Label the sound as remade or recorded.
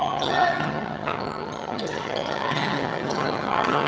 remade